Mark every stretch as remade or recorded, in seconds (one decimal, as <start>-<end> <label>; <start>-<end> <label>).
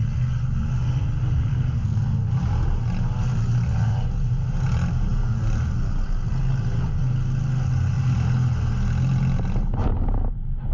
0.0-1.5 recorded; 1.5-2.0 remade; 2.0-10.7 recorded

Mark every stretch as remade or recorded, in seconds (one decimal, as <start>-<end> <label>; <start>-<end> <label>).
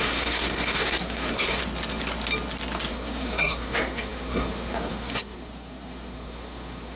0.0-1.6 remade; 1.6-2.9 recorded; 2.9-7.0 remade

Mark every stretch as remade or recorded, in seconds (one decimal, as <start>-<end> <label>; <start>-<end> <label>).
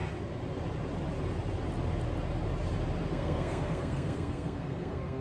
0.0-3.1 recorded; 3.1-5.2 remade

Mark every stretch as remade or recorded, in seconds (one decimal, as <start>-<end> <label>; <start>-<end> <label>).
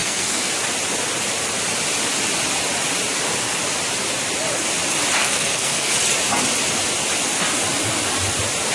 0.0-0.5 remade; 0.5-5.2 recorded; 5.2-5.9 remade; 5.9-8.7 recorded